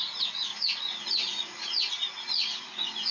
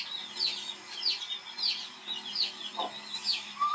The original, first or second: second